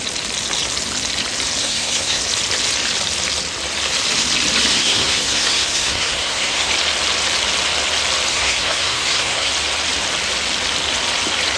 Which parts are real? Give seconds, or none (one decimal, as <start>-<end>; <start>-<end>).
0.0-1.6; 2.2-4.7; 6.7-8.3; 9.5-11.6